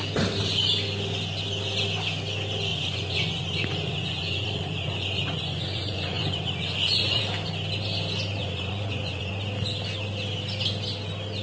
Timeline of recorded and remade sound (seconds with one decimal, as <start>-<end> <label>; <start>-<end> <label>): 0.0-2.7 recorded; 2.7-7.2 remade; 7.2-8.4 recorded; 8.4-9.3 remade; 9.3-11.4 recorded